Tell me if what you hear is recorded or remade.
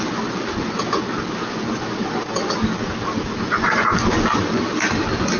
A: recorded